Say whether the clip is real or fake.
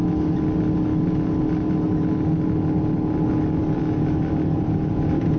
real